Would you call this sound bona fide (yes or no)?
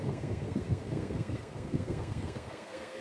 no